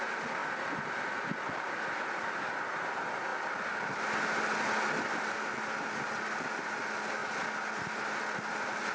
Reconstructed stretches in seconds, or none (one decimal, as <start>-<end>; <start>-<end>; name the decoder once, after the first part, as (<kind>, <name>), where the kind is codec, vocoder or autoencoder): none